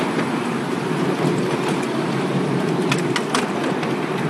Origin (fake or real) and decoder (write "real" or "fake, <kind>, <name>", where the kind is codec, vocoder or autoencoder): real